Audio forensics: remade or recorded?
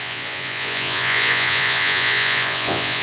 remade